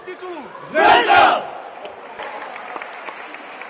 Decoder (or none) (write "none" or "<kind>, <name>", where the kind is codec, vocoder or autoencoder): none